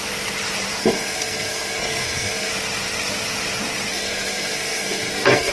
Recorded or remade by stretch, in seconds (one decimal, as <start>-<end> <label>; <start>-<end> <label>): 0.0-0.8 recorded; 0.8-2.5 remade; 2.5-3.9 recorded; 3.9-5.5 remade